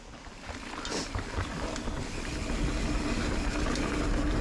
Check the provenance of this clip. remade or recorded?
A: recorded